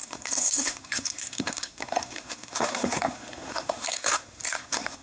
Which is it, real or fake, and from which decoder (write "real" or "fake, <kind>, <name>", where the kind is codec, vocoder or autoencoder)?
fake, codec, SNAC